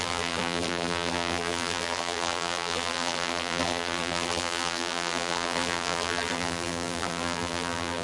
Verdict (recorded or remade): remade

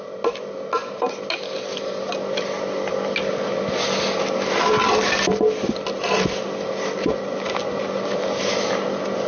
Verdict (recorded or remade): recorded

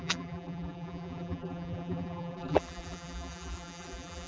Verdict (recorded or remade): remade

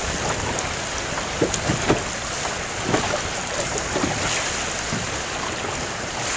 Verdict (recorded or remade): recorded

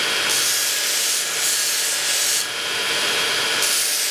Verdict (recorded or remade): recorded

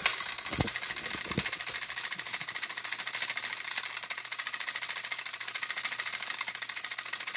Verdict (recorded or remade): recorded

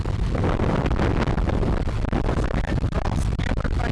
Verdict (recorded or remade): recorded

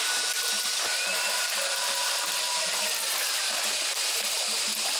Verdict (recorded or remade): recorded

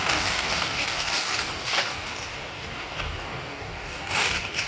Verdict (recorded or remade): remade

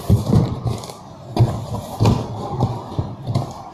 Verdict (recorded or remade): remade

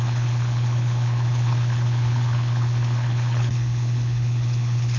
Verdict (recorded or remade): remade